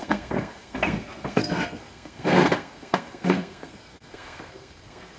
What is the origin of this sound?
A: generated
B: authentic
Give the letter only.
A